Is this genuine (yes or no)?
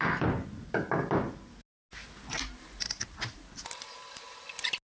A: yes